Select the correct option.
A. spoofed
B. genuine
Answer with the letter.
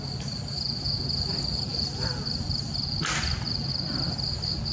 B